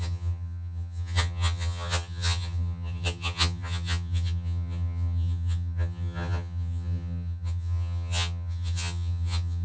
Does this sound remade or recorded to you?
remade